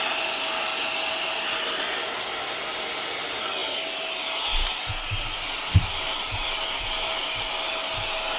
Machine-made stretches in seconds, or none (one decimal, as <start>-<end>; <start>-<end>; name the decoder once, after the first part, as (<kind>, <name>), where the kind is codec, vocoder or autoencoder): none